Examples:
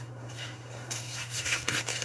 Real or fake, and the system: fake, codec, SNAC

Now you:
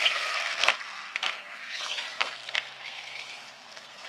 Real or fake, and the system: fake, codec, SNAC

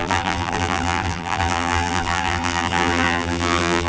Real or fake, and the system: fake, vocoder, BigVGAN v2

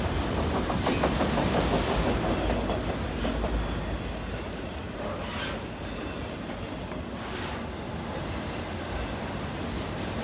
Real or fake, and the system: real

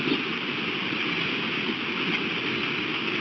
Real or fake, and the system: real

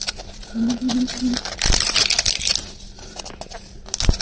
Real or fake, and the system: real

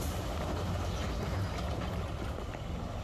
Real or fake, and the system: real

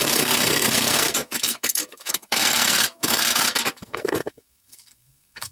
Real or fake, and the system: fake, codec, SNAC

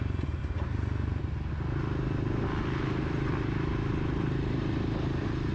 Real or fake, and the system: real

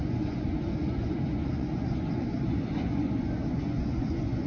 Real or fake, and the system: fake, vocoder, Vocos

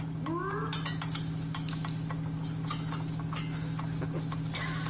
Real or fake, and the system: real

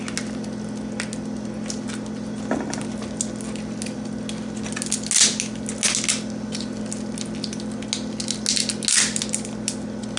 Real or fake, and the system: real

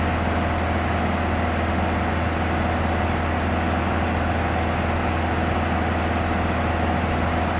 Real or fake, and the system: real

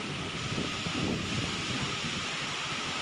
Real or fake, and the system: fake, vocoder, BigVGAN v2